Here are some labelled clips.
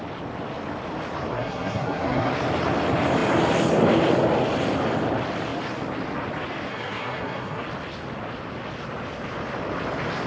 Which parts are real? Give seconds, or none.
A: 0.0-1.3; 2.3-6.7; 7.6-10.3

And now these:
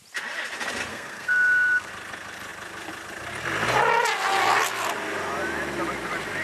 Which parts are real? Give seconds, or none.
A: 0.0-0.9; 1.9-6.4